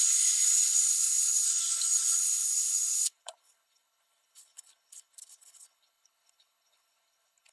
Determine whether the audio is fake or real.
fake